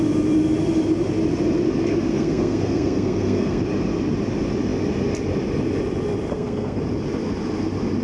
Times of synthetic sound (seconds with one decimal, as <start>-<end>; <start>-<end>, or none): 2.1-3.6; 6.3-6.8